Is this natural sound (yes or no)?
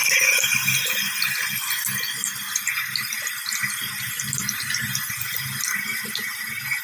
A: yes